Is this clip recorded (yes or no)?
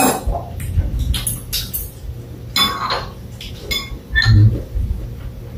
yes